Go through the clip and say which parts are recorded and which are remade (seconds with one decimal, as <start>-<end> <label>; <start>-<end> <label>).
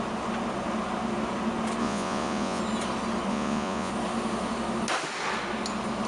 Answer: 0.0-1.8 recorded; 1.8-2.6 remade; 2.6-3.3 recorded; 3.3-3.9 remade; 3.9-6.1 recorded